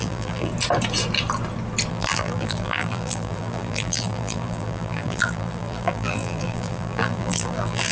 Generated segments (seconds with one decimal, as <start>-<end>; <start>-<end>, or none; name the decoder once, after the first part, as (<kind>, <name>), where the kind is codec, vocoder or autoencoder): 0.0-0.5 (vocoder, BigVGAN v2); 1.9-7.9